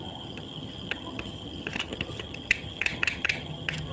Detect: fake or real fake